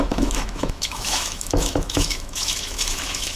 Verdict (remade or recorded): remade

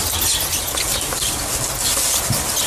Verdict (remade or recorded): recorded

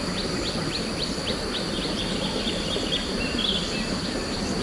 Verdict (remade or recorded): recorded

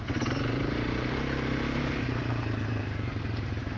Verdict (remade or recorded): remade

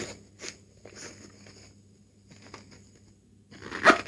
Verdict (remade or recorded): recorded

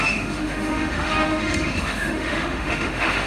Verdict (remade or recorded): remade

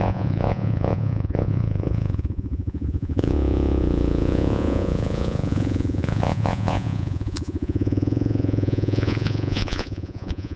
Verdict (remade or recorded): remade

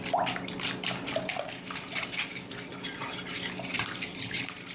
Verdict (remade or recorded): recorded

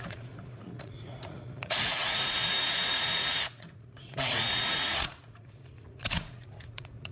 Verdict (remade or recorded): remade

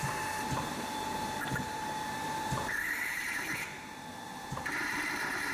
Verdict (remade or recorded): remade